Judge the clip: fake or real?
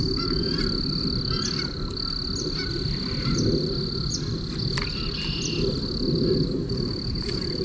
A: real